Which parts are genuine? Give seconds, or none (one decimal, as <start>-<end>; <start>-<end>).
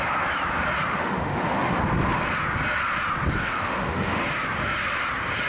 0.0-0.9; 1.8-3.4; 4.2-5.5